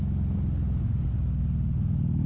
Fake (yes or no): no